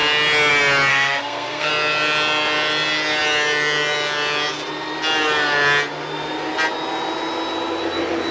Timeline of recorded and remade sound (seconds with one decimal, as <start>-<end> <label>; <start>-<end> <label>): 0.0-0.9 recorded; 0.9-1.7 remade; 1.7-8.3 recorded